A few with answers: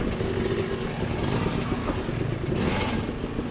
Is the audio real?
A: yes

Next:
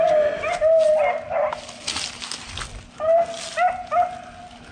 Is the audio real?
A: yes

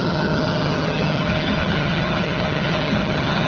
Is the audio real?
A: no